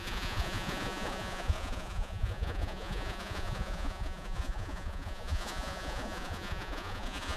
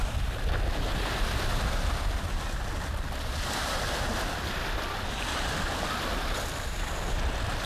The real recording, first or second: second